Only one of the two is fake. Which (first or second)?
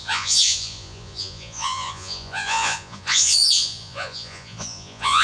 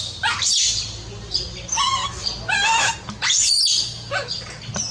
first